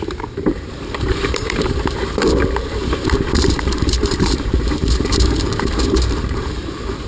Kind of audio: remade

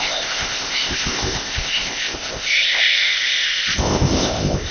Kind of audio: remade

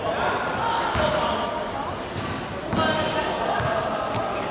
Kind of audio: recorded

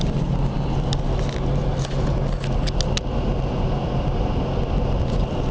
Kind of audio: recorded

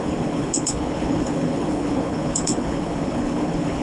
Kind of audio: remade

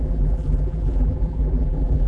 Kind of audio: remade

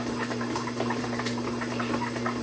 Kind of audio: recorded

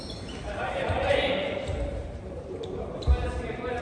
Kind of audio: remade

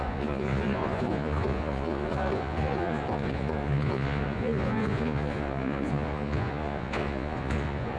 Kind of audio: remade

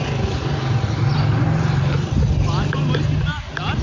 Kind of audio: recorded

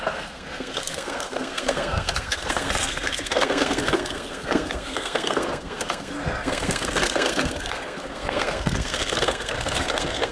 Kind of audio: remade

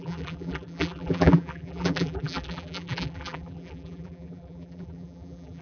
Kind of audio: remade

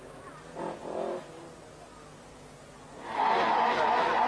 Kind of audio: recorded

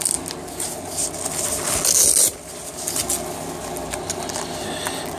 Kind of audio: recorded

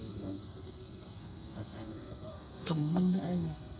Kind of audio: remade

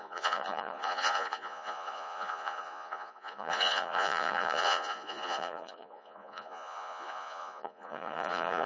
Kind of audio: remade